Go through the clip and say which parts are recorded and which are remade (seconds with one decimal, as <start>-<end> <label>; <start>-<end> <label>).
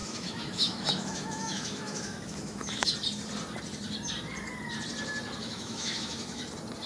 0.0-2.9 remade; 2.9-5.4 recorded; 5.4-6.4 remade; 6.4-6.9 recorded